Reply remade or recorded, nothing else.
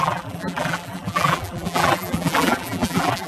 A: remade